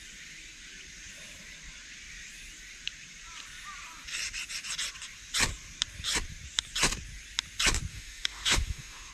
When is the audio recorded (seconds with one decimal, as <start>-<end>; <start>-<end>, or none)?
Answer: 0.0-7.9